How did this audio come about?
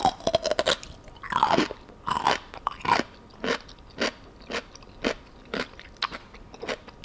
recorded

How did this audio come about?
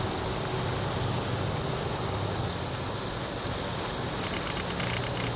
recorded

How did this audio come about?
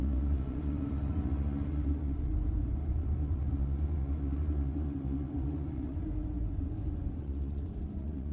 remade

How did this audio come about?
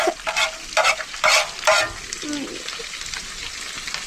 recorded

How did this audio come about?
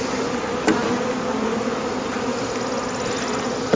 recorded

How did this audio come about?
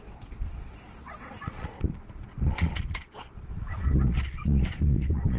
remade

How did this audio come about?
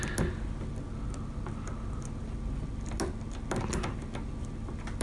recorded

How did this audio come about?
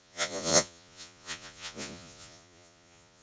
remade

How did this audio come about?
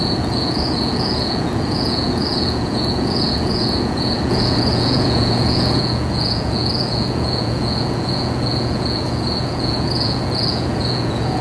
remade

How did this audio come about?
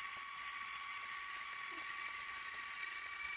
remade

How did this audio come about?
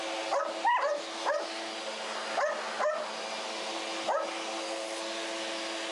recorded